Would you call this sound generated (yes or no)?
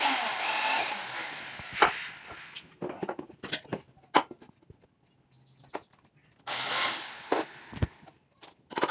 no